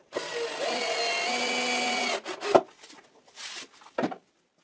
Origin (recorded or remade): recorded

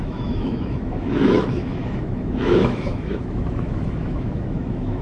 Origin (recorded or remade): remade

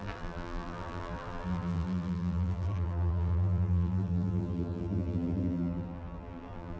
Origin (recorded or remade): remade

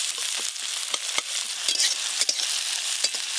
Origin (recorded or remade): recorded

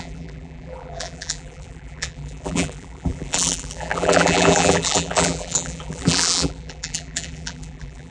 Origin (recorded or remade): remade